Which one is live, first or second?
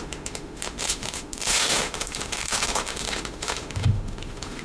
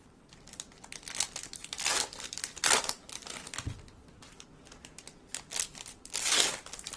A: second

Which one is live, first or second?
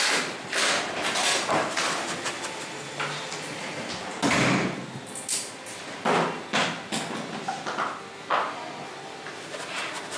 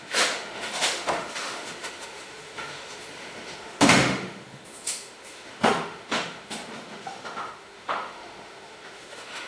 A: first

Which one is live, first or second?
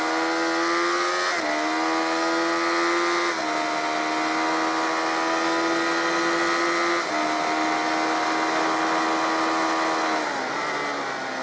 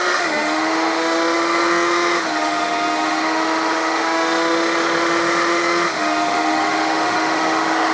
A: first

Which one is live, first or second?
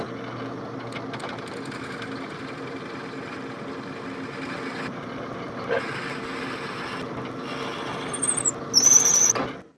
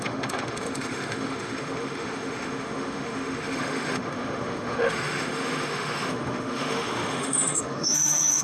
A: first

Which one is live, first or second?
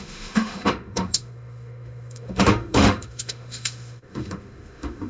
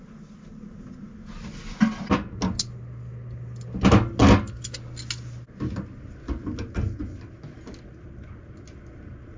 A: second